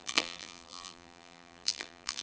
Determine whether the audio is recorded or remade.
remade